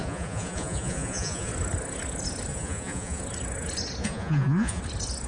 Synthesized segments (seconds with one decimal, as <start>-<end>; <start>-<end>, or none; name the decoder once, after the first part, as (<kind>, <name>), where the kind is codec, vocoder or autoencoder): 0.0-1.5 (vocoder, Vocos); 2.5-3.2; 4.0-4.8